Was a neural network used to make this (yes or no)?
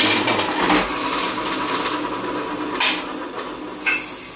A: no